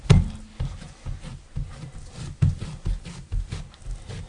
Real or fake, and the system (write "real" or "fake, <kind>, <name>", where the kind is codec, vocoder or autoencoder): real